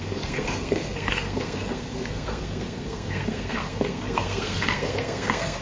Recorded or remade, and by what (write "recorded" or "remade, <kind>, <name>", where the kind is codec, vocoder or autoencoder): remade, codec, SNAC